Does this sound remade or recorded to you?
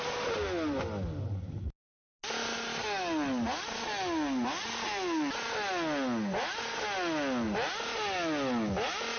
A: recorded